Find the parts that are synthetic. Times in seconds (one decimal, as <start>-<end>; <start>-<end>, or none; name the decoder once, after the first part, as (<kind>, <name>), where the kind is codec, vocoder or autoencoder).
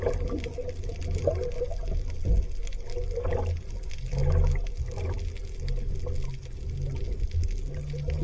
none